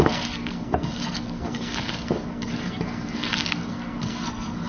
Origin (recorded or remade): remade